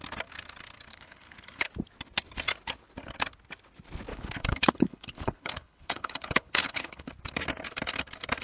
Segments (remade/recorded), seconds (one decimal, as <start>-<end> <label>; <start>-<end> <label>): 0.0-0.9 recorded; 0.9-1.7 remade; 1.7-4.1 recorded; 4.1-7.1 remade; 7.1-8.4 recorded